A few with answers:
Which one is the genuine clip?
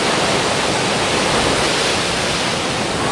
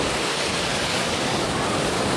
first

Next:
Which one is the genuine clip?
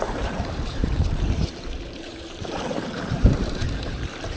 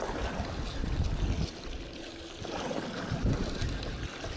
second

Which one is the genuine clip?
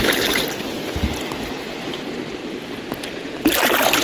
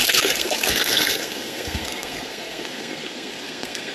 first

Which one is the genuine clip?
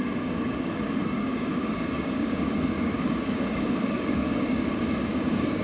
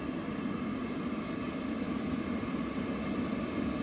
second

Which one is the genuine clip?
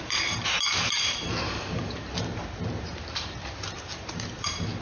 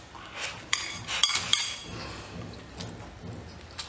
second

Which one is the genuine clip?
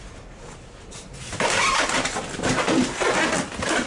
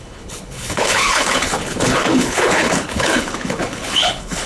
first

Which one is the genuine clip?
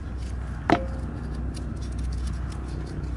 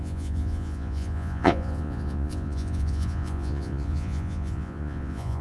first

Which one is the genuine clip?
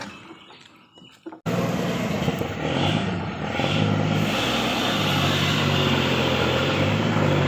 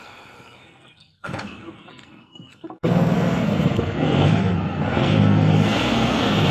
first